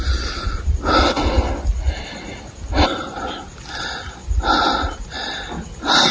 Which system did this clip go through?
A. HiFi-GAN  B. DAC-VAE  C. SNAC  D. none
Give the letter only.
D